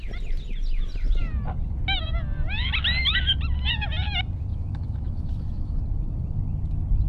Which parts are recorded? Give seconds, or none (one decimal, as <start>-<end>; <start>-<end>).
0.0-4.5; 5.8-7.1